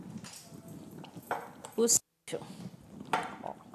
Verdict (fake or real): real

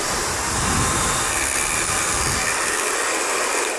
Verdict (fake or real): real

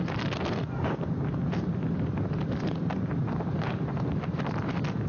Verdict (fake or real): real